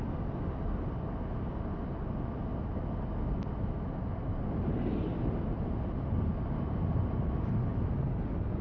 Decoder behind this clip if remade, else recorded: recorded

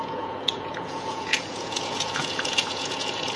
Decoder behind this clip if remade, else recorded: remade, vocoder, Vocos